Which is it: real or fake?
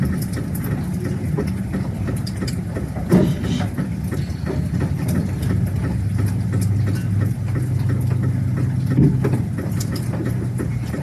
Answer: real